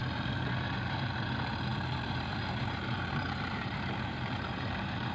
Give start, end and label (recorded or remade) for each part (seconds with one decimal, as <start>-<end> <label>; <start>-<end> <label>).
0.0-0.6 recorded; 0.6-5.1 remade